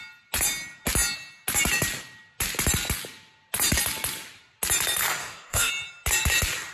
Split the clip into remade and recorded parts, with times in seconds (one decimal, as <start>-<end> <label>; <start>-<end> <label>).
0.0-5.2 recorded; 5.2-5.7 remade; 5.7-6.7 recorded